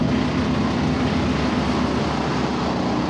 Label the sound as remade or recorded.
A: recorded